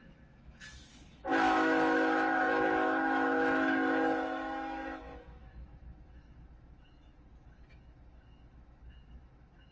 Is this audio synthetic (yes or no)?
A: yes